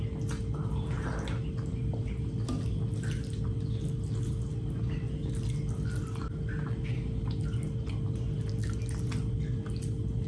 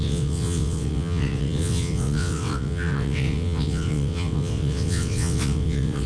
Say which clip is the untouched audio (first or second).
first